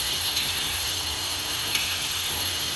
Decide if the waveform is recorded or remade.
remade